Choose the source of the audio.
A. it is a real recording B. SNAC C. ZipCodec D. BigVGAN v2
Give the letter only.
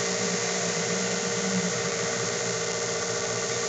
D